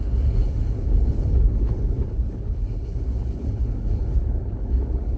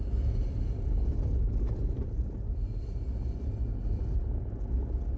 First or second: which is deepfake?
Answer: first